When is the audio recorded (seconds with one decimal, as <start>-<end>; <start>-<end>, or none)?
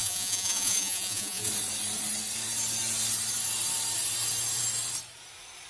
1.5-5.7